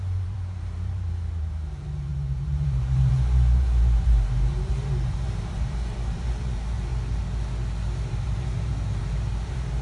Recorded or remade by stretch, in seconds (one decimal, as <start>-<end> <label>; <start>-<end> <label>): 0.0-6.9 remade; 6.9-8.0 recorded; 8.0-9.8 remade